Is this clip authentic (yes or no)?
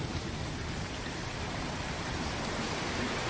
yes